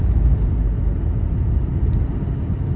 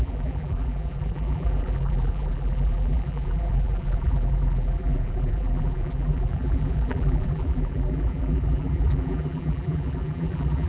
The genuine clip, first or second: first